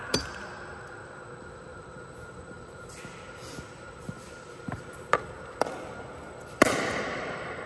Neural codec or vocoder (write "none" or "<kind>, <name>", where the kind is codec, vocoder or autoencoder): vocoder, BigVGAN v2